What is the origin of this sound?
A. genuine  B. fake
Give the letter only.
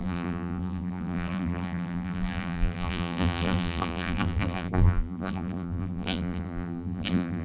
B